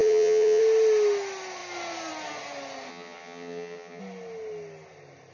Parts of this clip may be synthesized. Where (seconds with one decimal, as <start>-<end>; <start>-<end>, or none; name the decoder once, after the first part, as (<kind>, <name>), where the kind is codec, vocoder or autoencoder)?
0.0-0.6 (vocoder, HiFi-GAN); 2.9-4.0